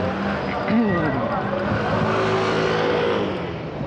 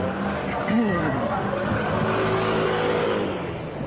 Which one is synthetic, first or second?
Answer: second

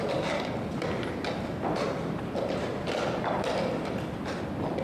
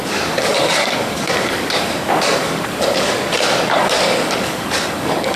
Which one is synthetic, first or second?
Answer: second